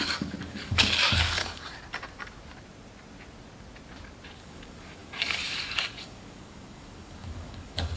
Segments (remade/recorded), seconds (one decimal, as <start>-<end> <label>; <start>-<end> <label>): 0.0-1.4 remade; 1.4-4.4 recorded; 4.4-8.0 remade